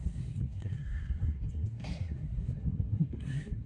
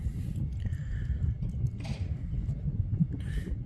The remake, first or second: first